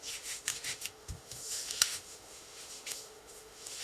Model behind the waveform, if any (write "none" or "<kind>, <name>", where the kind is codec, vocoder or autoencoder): autoencoder, DAC-VAE